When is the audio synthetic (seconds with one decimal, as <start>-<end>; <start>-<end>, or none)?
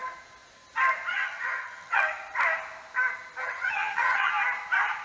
1.1-2.0; 3.4-4.3